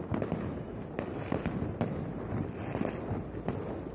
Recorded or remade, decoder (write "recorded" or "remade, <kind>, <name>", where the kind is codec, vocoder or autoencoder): recorded